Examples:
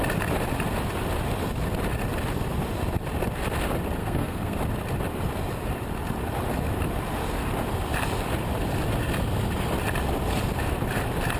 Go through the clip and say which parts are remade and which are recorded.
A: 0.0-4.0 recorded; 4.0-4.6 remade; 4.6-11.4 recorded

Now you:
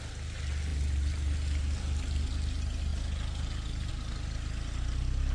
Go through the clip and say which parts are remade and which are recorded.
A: 0.0-5.3 recorded

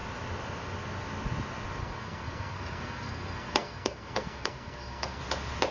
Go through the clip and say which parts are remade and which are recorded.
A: 0.0-1.8 recorded; 1.8-5.2 remade; 5.2-5.7 recorded

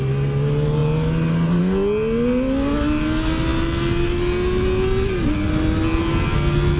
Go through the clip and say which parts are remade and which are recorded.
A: 0.0-6.8 recorded

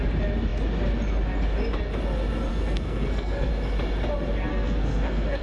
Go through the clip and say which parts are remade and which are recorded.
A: 0.0-2.5 recorded; 2.5-3.5 remade; 3.5-4.5 recorded; 4.5-5.4 remade